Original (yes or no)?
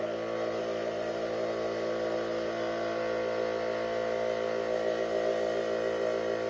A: yes